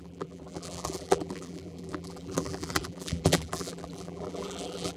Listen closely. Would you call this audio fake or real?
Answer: fake